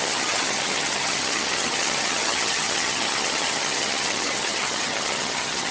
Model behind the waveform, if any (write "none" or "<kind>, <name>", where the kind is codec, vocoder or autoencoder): vocoder, HiFi-GAN